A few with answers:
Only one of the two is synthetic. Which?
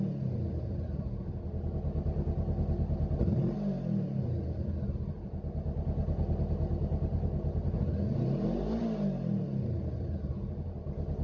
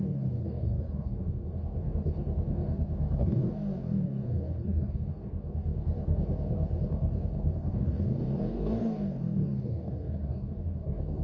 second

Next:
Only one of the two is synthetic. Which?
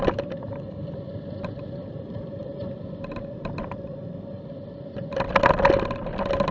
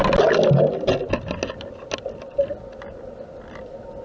first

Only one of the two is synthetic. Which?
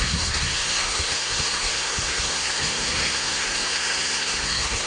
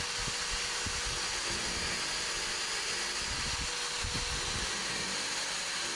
first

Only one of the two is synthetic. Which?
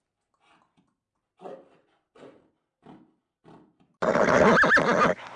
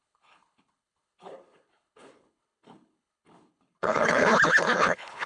second